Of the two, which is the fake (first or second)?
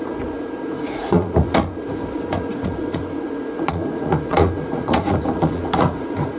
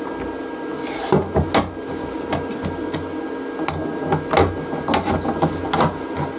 first